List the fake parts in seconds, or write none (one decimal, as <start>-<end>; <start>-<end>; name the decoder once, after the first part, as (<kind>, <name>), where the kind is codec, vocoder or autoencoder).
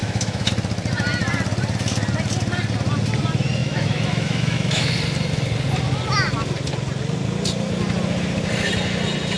0.0-0.5 (autoencoder, DAC-VAE); 3.6-4.9